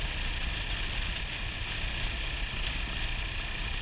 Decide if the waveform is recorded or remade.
recorded